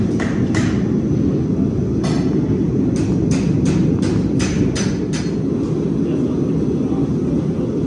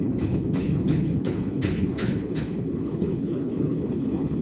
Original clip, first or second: first